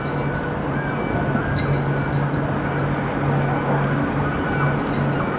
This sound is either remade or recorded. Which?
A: recorded